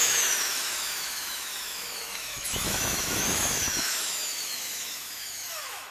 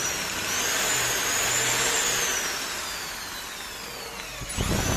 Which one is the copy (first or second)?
first